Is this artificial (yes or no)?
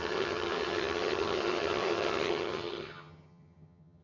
yes